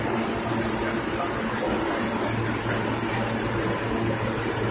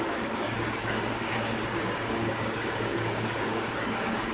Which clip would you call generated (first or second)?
second